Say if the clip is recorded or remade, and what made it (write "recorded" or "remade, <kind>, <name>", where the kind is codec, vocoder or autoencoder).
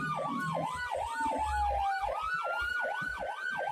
recorded